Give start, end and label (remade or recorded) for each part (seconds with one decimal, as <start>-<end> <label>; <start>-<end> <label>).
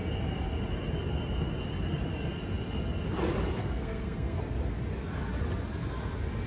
0.0-3.6 recorded; 3.6-4.4 remade; 4.4-6.5 recorded